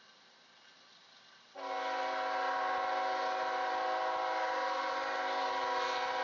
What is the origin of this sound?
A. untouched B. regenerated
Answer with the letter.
A